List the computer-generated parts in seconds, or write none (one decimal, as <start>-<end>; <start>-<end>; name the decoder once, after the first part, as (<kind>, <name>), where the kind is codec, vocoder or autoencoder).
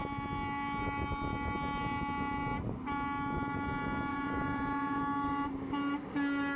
4.1-5.0 (vocoder, Vocos)